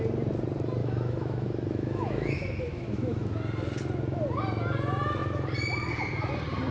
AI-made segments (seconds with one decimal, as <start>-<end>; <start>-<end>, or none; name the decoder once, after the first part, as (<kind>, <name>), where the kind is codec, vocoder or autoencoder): 0.8-3.3 (autoencoder, DAC-VAE)